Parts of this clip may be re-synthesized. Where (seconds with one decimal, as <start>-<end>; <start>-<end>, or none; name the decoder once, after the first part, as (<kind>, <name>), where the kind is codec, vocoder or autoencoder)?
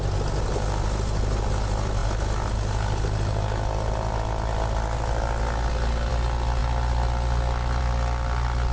none